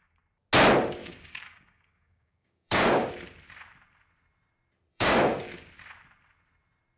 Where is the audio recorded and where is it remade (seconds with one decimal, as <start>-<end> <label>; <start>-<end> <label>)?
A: 0.0-1.0 recorded; 1.0-3.1 remade; 3.1-4.9 recorded; 4.9-5.7 remade; 5.7-7.0 recorded